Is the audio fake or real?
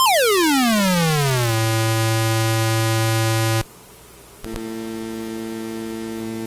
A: real